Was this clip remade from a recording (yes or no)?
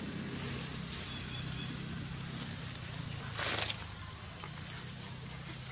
no